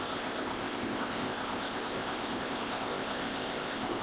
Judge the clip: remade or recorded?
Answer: remade